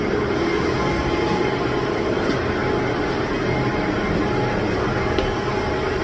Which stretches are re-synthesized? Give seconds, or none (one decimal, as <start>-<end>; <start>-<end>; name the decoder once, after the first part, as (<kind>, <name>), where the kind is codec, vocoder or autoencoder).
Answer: none